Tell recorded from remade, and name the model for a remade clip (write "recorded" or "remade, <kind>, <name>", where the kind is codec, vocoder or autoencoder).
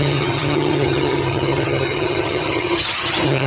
remade, vocoder, HiFi-GAN